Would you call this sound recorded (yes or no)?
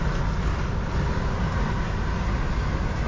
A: yes